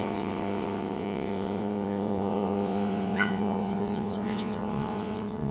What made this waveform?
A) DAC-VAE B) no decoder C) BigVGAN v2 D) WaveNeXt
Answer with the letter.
D